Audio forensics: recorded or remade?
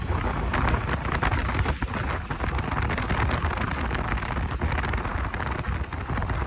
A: recorded